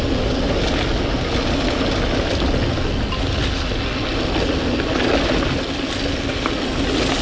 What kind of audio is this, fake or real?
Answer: real